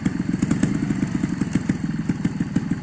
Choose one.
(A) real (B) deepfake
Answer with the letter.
A